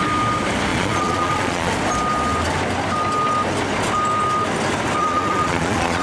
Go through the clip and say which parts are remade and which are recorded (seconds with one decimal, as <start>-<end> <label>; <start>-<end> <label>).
0.0-0.7 recorded; 0.7-1.7 remade; 1.7-5.0 recorded; 5.0-6.0 remade